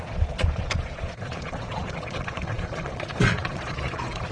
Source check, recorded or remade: remade